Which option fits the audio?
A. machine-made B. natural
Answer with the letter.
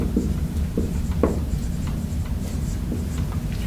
A